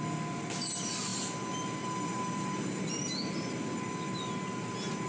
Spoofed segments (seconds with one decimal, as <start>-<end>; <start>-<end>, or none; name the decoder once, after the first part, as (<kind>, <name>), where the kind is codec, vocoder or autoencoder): none